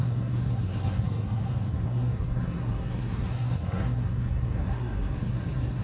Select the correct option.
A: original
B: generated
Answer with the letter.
B